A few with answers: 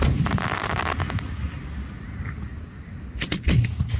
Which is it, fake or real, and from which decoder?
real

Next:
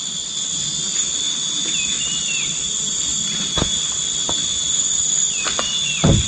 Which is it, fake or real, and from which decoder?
real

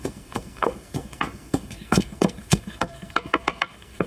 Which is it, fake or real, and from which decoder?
fake, codec, SNAC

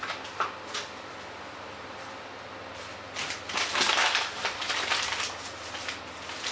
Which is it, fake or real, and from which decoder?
real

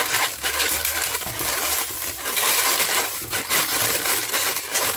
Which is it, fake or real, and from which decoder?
real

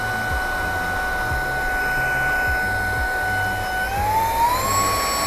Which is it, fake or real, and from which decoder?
real